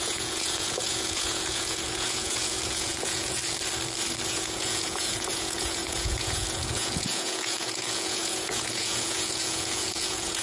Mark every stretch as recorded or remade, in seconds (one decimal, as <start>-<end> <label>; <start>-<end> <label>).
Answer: 0.0-3.4 remade; 3.4-4.2 recorded; 4.2-10.4 remade

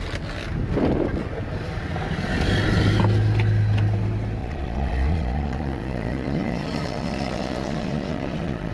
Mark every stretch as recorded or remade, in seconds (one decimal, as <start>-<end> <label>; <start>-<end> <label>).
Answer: 0.0-4.4 recorded; 4.4-8.7 remade

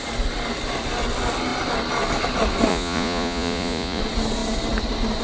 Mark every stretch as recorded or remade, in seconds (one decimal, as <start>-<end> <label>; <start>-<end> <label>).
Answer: 0.0-2.7 recorded; 2.7-4.0 remade; 4.0-5.2 recorded

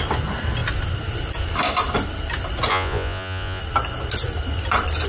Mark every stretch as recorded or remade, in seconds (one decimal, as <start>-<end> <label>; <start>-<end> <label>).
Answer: 0.0-2.7 recorded; 2.7-3.6 remade; 3.6-5.1 recorded